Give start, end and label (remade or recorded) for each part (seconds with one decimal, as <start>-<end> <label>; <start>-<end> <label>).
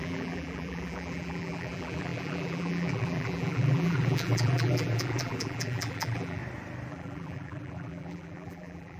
0.0-6.4 remade; 6.4-6.9 recorded; 6.9-9.0 remade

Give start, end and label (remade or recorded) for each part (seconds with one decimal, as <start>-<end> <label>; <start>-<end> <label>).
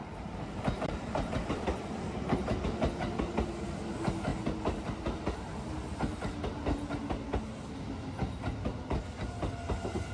0.0-2.6 remade; 2.6-10.1 recorded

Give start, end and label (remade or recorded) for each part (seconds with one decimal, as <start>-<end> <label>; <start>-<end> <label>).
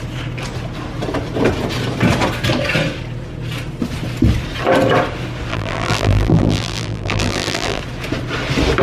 0.0-5.5 recorded; 5.5-7.8 remade; 7.8-8.8 recorded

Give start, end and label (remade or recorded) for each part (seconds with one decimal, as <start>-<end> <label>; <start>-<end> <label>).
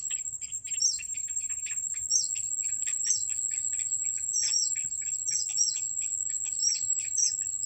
0.0-0.6 recorded; 0.6-2.0 remade; 2.0-6.6 recorded; 6.6-7.2 remade; 7.2-7.7 recorded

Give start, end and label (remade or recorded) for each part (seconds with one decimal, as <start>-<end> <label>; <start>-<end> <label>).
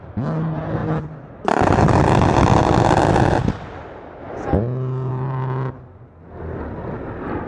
0.0-0.8 remade; 0.8-5.1 recorded; 5.1-7.5 remade